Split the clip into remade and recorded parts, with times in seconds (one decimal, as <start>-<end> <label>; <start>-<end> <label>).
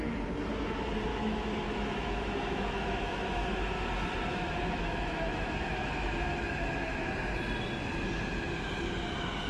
0.0-1.1 recorded; 1.1-3.6 remade; 3.6-4.3 recorded; 4.3-7.1 remade; 7.1-9.5 recorded